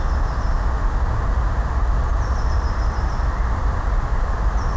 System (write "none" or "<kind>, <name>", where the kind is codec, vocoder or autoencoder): none